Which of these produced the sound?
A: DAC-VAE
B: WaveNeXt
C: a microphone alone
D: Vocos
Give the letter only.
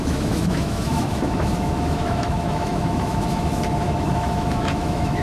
A